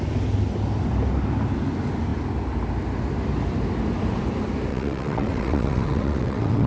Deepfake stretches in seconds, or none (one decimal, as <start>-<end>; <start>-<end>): 4.7-6.7